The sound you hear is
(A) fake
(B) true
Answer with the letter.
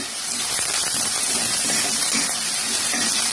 A